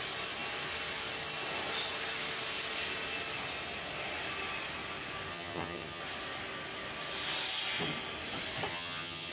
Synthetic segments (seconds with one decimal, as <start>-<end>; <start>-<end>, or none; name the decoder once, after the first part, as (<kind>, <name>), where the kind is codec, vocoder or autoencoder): 5.3-6.0 (vocoder, HiFi-GAN); 8.7-9.3